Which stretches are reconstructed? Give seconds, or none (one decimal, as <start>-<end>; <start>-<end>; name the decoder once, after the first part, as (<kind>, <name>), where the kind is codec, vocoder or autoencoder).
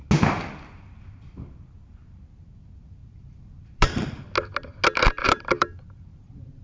3.0-4.2 (vocoder, BigVGAN v2); 5.2-6.6